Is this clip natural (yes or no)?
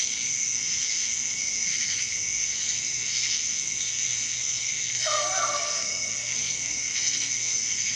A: no